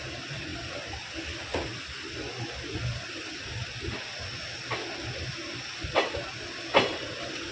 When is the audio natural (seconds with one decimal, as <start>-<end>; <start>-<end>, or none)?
0.0-7.5